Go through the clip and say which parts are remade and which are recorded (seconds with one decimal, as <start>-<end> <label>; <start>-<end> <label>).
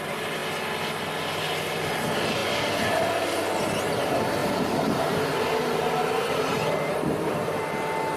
0.0-4.4 recorded; 4.4-7.6 remade; 7.6-8.2 recorded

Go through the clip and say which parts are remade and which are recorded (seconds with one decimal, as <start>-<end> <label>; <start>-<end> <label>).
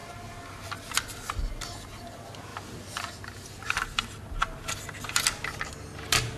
0.0-2.5 recorded; 2.5-3.1 remade; 3.1-6.4 recorded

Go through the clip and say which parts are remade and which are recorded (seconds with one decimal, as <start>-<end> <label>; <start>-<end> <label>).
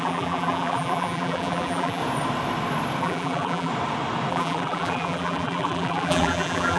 0.0-2.0 remade; 2.0-3.0 recorded; 3.0-3.7 remade; 3.7-4.3 recorded; 4.3-6.8 remade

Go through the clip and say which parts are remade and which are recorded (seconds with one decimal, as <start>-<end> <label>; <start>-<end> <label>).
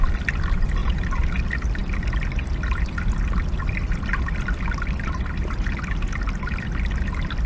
0.0-0.8 recorded; 0.8-1.3 remade; 1.3-7.5 recorded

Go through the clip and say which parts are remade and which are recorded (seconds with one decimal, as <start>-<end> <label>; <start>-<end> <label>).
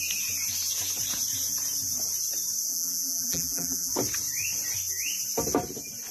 0.0-2.7 recorded; 2.7-3.9 remade; 3.9-6.1 recorded